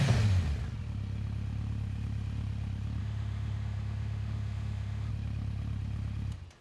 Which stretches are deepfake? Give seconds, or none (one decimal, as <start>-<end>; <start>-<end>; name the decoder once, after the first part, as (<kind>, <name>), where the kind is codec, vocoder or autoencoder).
3.0-5.1 (autoencoder, DAC-VAE)